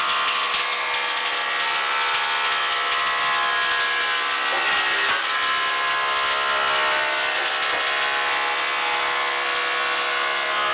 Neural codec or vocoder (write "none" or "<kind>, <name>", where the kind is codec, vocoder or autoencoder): none